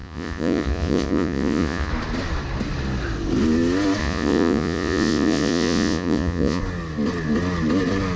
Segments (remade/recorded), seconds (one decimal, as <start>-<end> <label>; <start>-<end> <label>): 0.0-1.9 remade; 1.9-4.0 recorded; 4.0-6.6 remade; 6.6-8.2 recorded

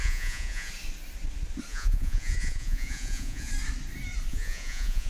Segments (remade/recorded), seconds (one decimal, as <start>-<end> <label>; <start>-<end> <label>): 0.0-0.7 remade; 0.7-1.7 recorded; 1.7-3.5 remade; 3.5-4.3 recorded; 4.3-5.1 remade